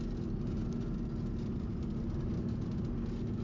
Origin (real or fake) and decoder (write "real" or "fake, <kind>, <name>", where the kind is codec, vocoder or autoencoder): real